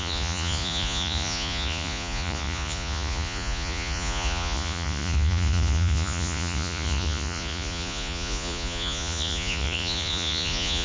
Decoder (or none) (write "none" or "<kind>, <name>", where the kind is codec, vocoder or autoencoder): vocoder, Vocos